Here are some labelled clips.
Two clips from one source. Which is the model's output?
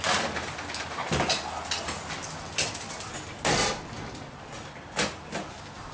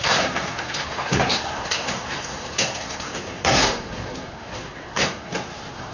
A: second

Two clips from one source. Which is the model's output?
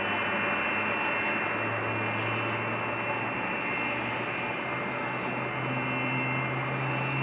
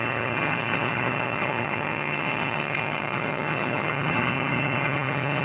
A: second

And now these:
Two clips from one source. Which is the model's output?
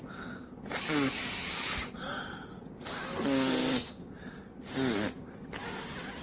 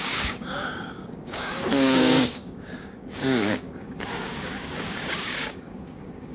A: second